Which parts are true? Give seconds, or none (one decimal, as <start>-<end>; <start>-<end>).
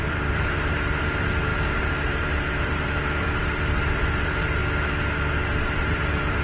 4.6-5.8